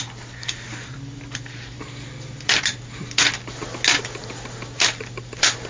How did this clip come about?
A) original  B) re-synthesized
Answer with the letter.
A